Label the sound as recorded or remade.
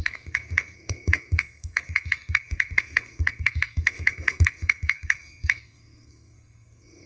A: remade